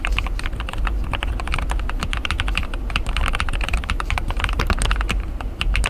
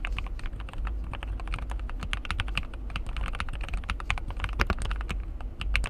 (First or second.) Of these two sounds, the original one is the second